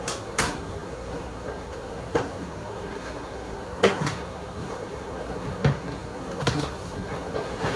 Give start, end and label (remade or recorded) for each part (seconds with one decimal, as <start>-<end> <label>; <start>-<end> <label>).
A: 0.0-7.8 remade